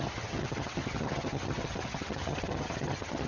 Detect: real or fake fake